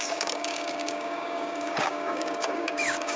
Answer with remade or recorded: remade